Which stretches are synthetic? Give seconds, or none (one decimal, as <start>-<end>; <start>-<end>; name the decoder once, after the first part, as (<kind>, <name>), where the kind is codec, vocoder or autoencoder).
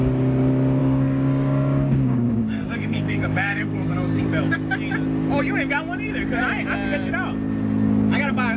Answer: 0.8-4.2 (codec, DAC)